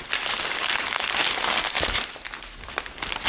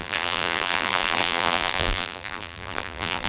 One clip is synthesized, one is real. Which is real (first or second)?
first